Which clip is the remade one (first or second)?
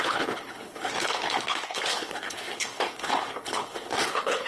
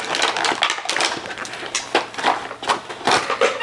first